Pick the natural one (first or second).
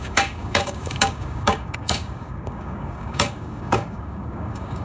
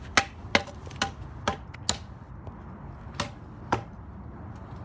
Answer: second